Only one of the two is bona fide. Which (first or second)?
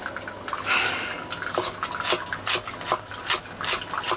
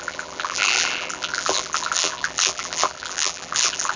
first